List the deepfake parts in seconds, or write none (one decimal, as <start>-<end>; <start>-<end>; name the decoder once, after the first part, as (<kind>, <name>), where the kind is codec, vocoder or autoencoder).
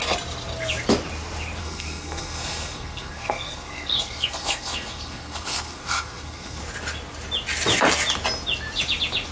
1.6-6.6 (codec, SNAC)